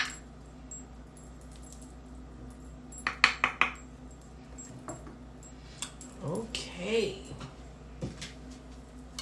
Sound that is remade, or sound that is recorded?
recorded